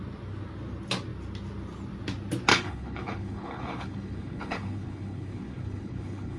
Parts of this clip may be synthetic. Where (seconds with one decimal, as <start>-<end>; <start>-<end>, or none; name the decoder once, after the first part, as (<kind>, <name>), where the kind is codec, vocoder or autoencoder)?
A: 2.5-6.4 (codec, HILCodec)